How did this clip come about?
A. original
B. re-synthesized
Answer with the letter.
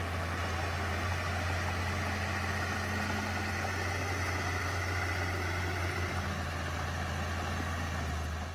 A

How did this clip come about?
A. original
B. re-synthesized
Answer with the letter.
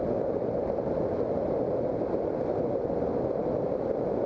A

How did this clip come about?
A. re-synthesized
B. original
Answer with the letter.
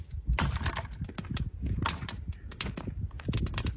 B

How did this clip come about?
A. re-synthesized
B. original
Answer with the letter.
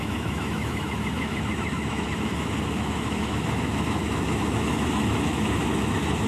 A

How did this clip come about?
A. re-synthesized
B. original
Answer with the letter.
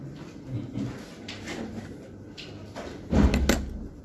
B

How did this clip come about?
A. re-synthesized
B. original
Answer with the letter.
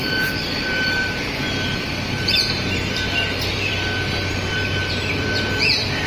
A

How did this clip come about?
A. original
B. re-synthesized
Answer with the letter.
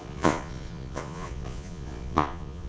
B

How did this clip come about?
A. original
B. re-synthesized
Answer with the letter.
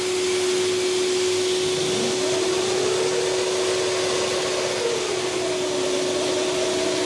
A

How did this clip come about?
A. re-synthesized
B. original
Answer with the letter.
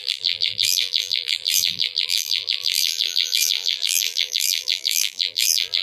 A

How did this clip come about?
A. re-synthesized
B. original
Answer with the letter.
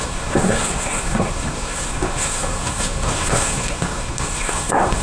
A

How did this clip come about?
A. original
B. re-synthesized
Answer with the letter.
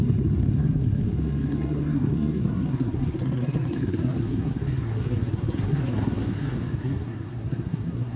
B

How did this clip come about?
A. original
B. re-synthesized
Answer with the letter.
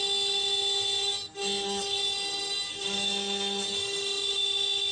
A